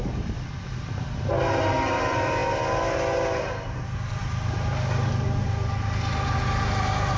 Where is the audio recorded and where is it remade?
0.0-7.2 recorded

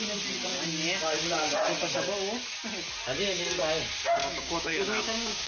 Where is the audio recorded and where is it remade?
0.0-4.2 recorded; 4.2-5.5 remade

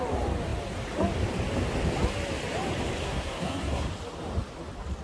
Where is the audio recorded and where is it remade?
0.0-3.0 recorded; 3.0-3.9 remade; 3.9-5.0 recorded

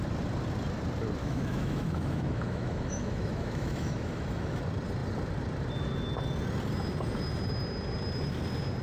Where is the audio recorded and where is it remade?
0.0-1.2 recorded; 1.2-4.6 remade; 4.6-8.8 recorded

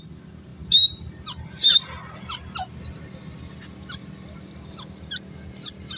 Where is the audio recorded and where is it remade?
0.0-6.0 recorded

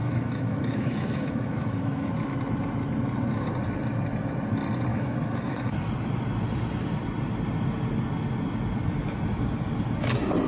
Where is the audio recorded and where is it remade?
0.0-2.1 remade; 2.1-4.9 recorded; 4.9-5.9 remade; 5.9-10.5 recorded